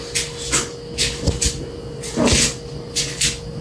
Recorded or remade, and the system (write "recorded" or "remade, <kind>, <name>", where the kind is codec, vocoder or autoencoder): recorded